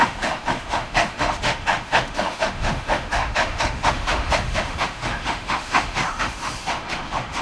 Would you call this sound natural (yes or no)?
no